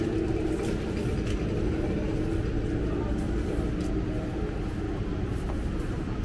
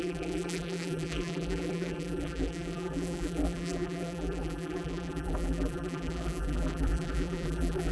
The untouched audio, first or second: first